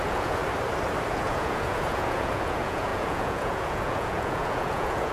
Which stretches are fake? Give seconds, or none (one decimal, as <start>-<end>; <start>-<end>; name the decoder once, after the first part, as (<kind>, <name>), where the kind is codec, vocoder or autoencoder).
0.0-0.4 (vocoder, Vocos); 1.1-5.1